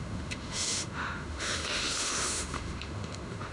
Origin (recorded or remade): remade